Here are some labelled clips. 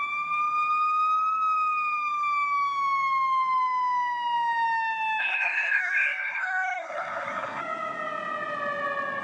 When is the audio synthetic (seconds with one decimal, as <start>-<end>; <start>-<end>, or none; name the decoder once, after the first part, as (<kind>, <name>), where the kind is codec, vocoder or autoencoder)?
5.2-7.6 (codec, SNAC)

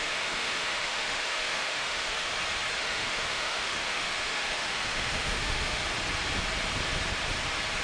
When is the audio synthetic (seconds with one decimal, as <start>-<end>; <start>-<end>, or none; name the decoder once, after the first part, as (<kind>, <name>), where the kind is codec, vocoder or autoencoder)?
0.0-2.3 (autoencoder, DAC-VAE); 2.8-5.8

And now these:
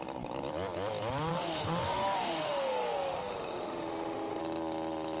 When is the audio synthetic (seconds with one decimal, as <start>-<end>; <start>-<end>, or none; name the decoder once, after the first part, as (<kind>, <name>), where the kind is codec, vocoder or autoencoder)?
1.3-4.4 (autoencoder, DAC-VAE)

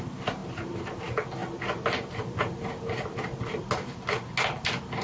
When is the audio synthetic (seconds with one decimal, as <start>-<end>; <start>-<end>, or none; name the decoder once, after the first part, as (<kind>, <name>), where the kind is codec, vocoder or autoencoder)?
0.4-0.9 (vocoder, BigVGAN v2)

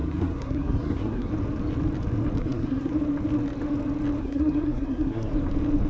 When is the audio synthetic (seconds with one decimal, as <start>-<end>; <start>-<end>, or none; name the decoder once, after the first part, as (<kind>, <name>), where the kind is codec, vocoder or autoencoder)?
0.0-1.3 (codec, SNAC); 2.4-2.9; 4.2-5.3

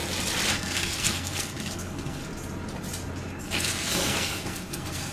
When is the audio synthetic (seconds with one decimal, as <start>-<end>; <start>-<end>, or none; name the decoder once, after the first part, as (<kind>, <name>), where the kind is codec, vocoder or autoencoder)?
0.5-2.2 (codec, SNAC); 3.4-5.1